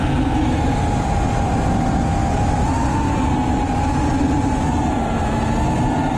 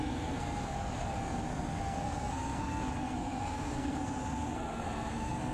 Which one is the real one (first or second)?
first